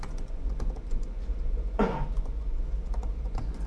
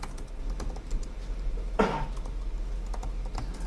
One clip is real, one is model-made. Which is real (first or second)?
second